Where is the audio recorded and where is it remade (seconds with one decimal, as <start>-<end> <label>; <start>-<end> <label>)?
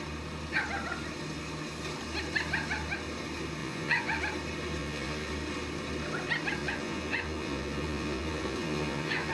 0.0-3.6 recorded; 3.6-4.2 remade; 4.2-4.8 recorded; 4.8-5.3 remade; 5.3-6.6 recorded; 6.6-9.3 remade